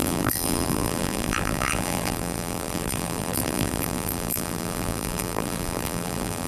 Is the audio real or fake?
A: fake